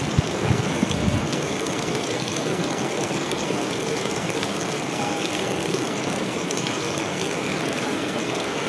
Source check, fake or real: fake